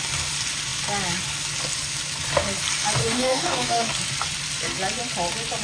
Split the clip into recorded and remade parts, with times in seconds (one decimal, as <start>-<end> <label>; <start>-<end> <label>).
0.0-3.0 recorded; 3.0-3.9 remade; 3.9-5.6 recorded